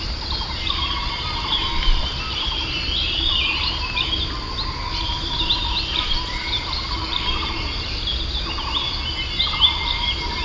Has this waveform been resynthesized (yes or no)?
no